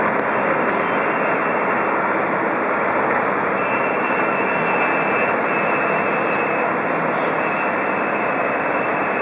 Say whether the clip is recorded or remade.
recorded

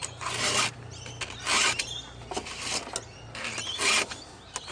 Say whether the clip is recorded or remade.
recorded